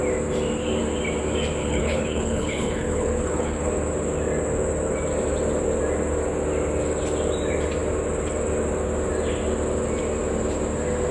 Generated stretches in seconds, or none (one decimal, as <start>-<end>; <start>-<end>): 1.6-3.7